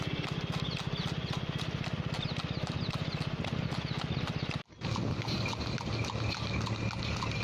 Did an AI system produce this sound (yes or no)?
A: no